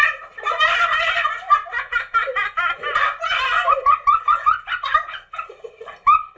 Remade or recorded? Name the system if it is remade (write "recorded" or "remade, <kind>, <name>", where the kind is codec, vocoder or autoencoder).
recorded